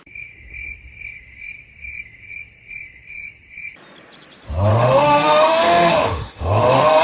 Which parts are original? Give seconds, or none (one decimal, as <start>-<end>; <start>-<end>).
0.0-4.7